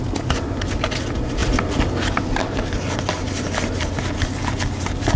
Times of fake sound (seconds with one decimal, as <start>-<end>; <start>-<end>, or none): none